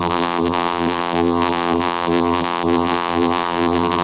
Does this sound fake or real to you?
fake